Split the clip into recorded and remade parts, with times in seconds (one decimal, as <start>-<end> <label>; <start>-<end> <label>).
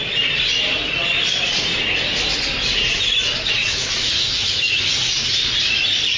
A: 0.0-3.6 recorded; 3.6-4.8 remade; 4.8-6.2 recorded